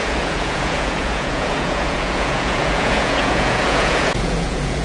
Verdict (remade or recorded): remade